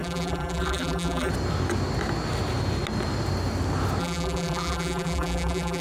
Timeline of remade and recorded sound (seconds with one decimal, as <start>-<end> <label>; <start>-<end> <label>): 0.0-1.3 remade; 1.3-4.0 recorded; 4.0-5.8 remade